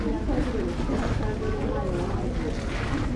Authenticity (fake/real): real